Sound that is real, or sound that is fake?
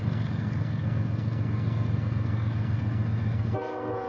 fake